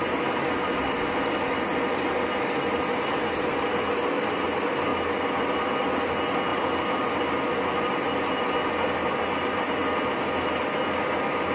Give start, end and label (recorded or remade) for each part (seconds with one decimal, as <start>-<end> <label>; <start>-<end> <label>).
0.0-11.5 recorded

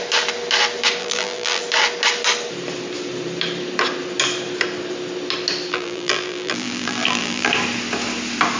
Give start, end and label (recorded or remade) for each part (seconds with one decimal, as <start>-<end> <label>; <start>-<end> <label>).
0.0-1.0 recorded; 1.0-1.6 remade; 1.6-5.7 recorded; 5.7-7.5 remade; 7.5-8.6 recorded

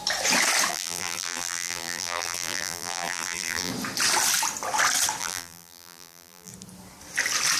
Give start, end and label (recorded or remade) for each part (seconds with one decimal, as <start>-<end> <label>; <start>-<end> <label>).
0.0-0.7 recorded; 0.7-3.7 remade; 3.7-5.2 recorded; 5.2-6.5 remade; 6.5-7.6 recorded

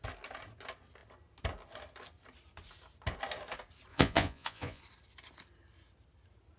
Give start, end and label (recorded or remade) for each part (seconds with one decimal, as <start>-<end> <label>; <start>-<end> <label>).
0.0-3.9 recorded; 3.9-4.8 remade; 4.8-6.6 recorded